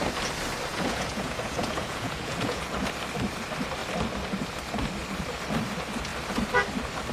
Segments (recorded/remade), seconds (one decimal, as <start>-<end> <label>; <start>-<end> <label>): 0.0-0.7 recorded; 0.7-2.6 remade; 2.6-7.1 recorded